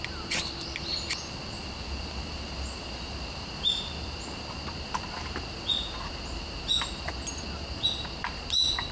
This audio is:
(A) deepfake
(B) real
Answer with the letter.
B